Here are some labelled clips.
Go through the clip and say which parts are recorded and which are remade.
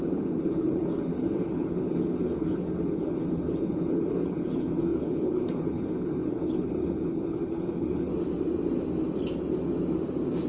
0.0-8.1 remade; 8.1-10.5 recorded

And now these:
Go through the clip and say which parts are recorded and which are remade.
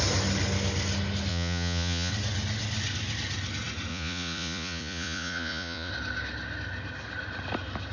0.0-1.3 recorded; 1.3-2.1 remade; 2.1-3.9 recorded; 3.9-5.9 remade; 5.9-7.9 recorded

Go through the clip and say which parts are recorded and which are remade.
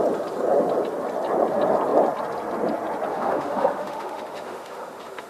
0.0-3.1 recorded; 3.1-5.3 remade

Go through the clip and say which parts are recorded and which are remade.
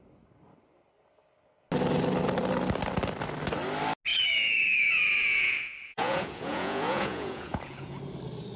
0.0-4.1 recorded; 4.1-8.0 remade; 8.0-8.6 recorded